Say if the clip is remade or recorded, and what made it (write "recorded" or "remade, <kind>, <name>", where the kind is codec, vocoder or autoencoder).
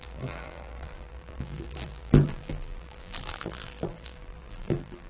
remade, vocoder, BigVGAN v2